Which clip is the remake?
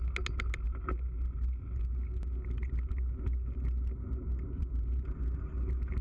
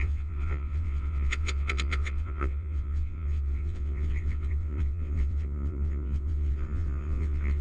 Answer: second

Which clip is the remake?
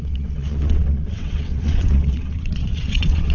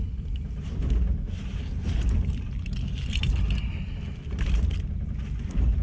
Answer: first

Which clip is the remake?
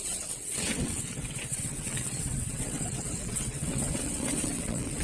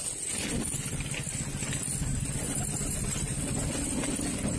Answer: first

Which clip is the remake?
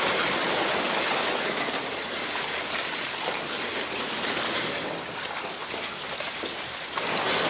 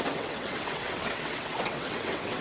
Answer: second